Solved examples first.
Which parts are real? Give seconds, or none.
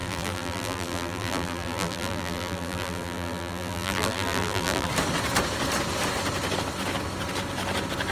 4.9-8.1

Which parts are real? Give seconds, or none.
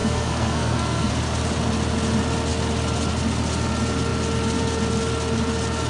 1.1-5.9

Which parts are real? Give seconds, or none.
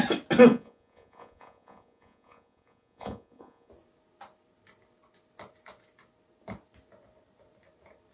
0.0-0.5; 3.7-8.1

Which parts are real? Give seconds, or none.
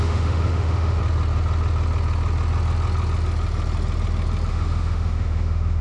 1.0-4.5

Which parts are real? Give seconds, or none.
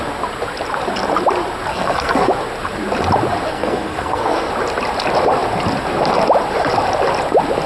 0.0-1.7; 2.3-3.5; 4.5-7.7